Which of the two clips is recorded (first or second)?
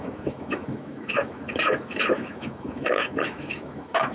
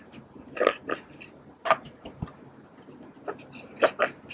second